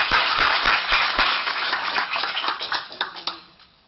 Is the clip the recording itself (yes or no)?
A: no